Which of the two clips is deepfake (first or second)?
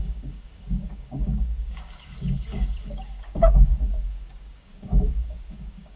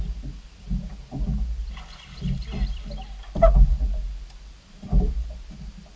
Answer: first